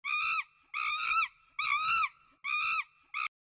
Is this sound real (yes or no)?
yes